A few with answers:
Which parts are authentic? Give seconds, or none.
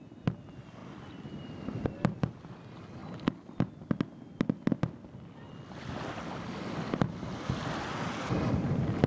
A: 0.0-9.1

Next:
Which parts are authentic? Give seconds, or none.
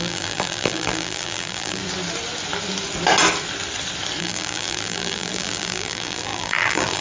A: 1.8-4.2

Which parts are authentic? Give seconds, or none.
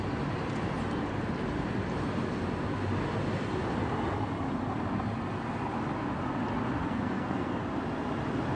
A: 0.0-6.8; 7.6-8.6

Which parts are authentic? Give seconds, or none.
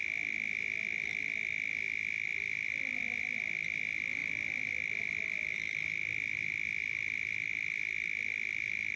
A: 0.0-4.2; 5.0-9.0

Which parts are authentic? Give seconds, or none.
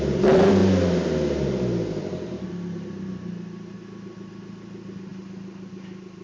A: 0.0-6.2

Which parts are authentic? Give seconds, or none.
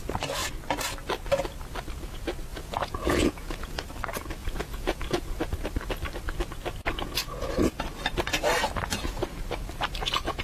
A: 0.0-2.5; 3.8-4.4; 5.4-10.4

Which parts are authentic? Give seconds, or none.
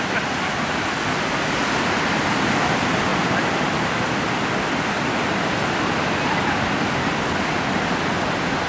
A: 0.0-8.7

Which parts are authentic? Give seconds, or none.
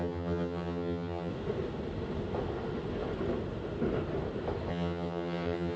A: 1.3-4.7